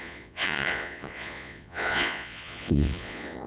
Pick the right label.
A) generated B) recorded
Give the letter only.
A